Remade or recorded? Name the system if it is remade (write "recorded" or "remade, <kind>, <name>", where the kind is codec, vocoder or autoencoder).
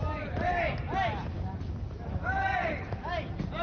recorded